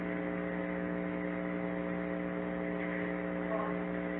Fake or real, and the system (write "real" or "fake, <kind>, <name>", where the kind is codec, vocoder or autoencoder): real